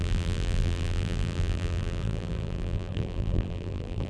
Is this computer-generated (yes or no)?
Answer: yes